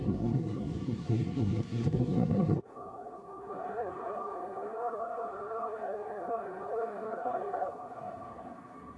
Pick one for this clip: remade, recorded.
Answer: remade